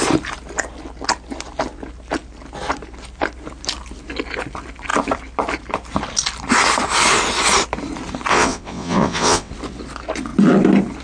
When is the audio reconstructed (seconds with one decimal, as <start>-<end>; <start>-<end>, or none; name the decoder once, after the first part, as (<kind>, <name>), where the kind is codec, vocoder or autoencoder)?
8.3-9.5 (vocoder, WaveNeXt)